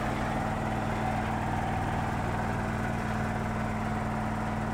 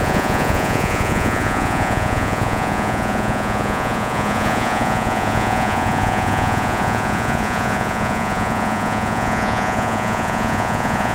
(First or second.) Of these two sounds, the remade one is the second